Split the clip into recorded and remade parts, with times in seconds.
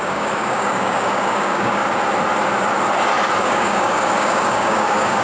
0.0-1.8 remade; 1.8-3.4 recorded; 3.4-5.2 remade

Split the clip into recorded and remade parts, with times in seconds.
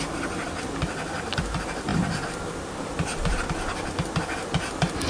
0.0-5.1 recorded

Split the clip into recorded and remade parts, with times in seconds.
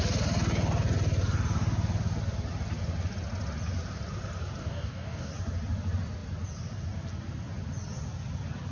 0.0-4.6 recorded; 4.6-5.3 remade; 5.3-8.7 recorded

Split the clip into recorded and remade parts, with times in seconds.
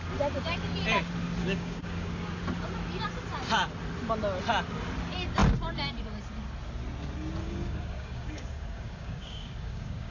0.0-1.4 recorded; 1.4-2.1 remade; 2.1-7.4 recorded; 7.4-10.1 remade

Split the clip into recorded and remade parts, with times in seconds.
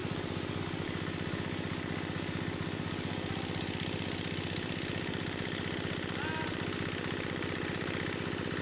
0.0-8.6 recorded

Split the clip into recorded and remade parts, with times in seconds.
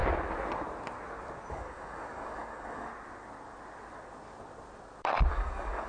0.0-1.5 recorded; 1.5-2.9 remade; 2.9-5.3 recorded; 5.3-5.9 remade